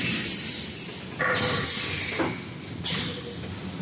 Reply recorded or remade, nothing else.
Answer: recorded